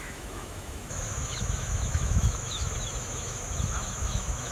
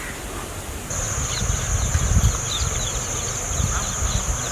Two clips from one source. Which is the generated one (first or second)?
first